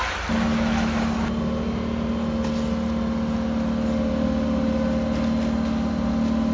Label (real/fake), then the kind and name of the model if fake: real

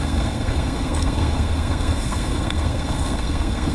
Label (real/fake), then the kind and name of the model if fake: fake, codec, SNAC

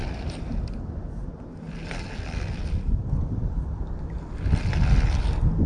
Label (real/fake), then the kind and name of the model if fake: real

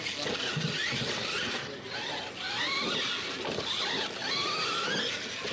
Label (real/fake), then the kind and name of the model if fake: real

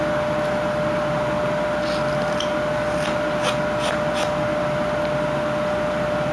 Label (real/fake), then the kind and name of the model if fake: real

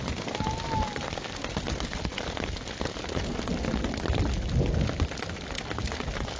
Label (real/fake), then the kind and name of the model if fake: real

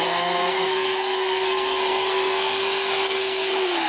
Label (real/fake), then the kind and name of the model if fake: fake, codec, SNAC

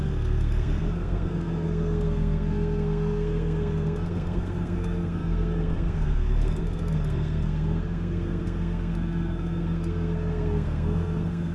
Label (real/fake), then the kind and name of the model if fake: fake, codec, SNAC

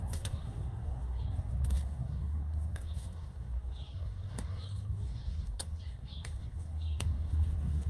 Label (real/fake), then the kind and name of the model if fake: fake, codec, SNAC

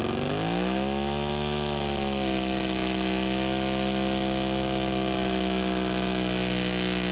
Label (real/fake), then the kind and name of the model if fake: real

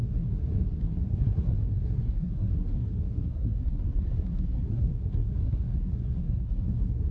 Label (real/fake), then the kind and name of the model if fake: fake, codec, SNAC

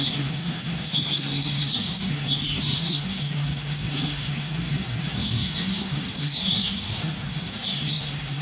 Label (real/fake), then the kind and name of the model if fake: fake, codec, SNAC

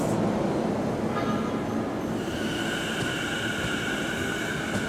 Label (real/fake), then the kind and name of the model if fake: real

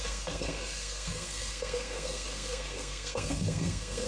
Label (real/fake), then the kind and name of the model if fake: fake, codec, SNAC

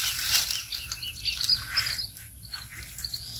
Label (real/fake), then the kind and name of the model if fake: real